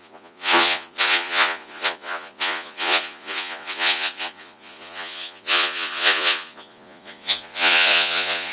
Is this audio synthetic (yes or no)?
yes